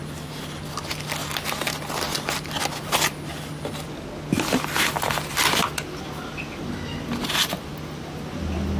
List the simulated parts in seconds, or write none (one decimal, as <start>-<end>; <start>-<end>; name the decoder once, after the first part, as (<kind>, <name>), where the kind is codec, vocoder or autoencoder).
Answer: 0.0-1.2 (vocoder, BigVGAN v2); 5.6-7.7; 8.4-8.8